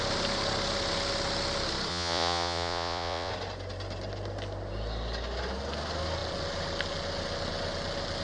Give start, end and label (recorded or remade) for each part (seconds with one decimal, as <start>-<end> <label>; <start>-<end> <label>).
0.0-1.9 recorded; 1.9-3.3 remade; 3.3-8.2 recorded